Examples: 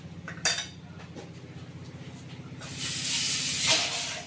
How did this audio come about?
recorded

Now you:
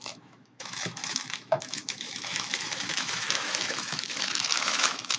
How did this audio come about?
remade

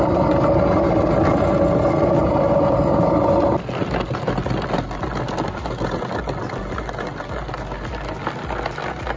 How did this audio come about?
recorded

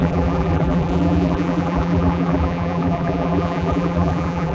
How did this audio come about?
remade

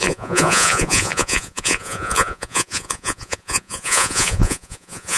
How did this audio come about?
remade